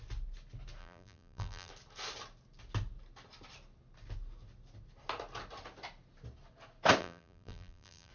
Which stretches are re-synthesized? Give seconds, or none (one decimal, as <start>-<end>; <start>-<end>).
0.8-1.7; 7.0-8.1